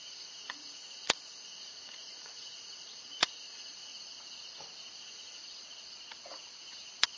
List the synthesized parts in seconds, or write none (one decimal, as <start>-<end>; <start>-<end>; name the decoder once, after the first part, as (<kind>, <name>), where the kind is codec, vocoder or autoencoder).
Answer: 0.0-3.9 (vocoder, Vocos); 5.0-5.4